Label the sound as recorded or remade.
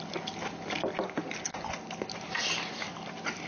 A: recorded